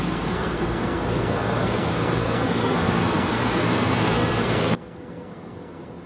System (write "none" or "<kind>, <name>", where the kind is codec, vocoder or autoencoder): codec, SNAC